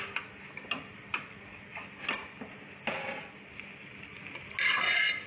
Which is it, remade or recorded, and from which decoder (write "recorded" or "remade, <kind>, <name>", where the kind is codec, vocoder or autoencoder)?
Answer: recorded